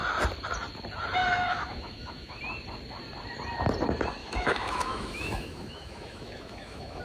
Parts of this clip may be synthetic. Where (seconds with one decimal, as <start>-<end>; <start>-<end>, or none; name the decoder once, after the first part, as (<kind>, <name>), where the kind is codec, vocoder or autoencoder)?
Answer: 1.2-2.4 (autoencoder, DAC-VAE); 4.2-7.0